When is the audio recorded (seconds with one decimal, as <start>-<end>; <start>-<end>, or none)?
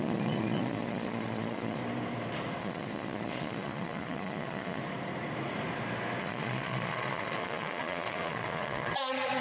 1.8-2.6; 4.8-6.2